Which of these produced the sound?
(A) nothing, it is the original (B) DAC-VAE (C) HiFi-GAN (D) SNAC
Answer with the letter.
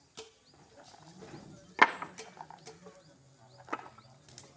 A